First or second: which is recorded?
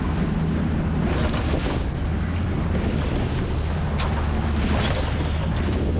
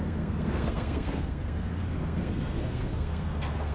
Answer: first